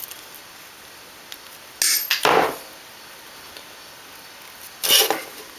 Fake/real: real